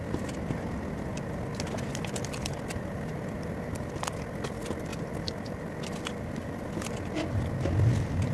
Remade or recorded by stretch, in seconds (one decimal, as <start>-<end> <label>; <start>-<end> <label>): 0.0-8.3 recorded